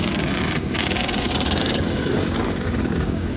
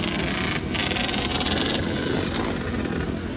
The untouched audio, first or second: second